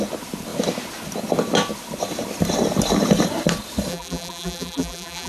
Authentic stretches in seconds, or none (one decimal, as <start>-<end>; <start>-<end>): 0.0-3.9